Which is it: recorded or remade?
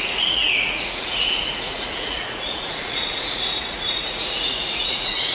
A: remade